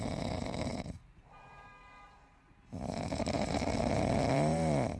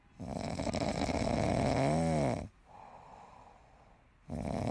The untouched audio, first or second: second